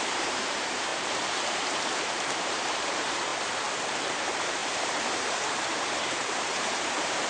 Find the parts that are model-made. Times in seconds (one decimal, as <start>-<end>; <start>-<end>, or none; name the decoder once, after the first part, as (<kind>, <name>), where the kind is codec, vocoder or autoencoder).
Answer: 0.0-3.3 (vocoder, BigVGAN v2); 4.1-7.3